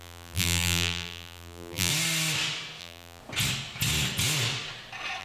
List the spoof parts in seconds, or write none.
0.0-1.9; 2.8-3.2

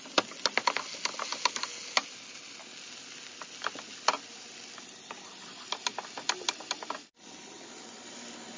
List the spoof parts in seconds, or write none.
none